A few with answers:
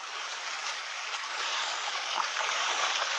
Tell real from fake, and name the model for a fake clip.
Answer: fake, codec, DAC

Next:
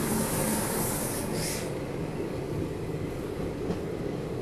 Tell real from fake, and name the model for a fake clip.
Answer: fake, codec, DAC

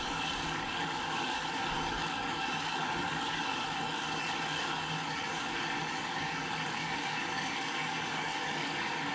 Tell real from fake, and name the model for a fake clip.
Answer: fake, codec, DAC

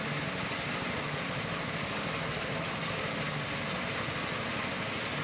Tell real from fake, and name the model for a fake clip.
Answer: real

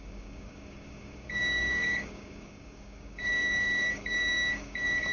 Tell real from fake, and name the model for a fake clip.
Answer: fake, codec, DAC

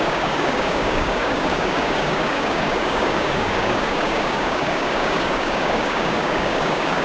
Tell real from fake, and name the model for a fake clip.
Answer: fake, codec, DAC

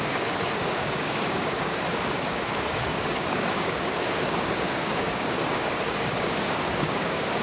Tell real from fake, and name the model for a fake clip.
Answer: fake, codec, DAC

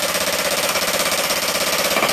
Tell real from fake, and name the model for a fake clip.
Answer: real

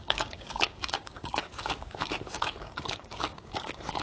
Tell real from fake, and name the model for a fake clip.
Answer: fake, codec, DAC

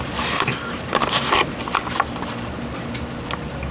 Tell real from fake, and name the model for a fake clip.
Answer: real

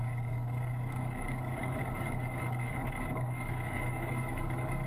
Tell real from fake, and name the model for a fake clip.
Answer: fake, codec, DAC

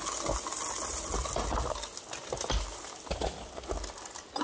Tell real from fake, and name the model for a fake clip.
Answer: real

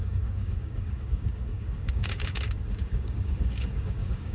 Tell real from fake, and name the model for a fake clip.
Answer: fake, codec, DAC